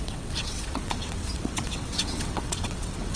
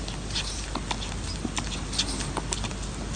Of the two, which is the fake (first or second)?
first